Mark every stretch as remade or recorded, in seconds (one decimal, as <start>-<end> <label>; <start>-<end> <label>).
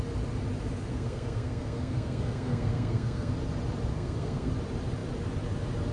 0.0-0.9 recorded; 0.9-3.3 remade; 3.3-3.9 recorded; 3.9-4.5 remade; 4.5-5.9 recorded